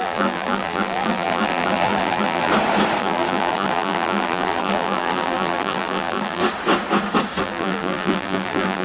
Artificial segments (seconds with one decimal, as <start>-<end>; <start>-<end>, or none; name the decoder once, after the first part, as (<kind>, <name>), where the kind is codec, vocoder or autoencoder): 0.0-2.5 (vocoder, BigVGAN v2); 3.0-6.4; 7.4-8.8